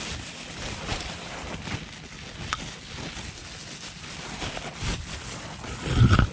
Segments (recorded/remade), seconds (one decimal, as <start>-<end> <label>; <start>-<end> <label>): 0.0-0.9 recorded; 0.9-1.4 remade; 1.4-6.3 recorded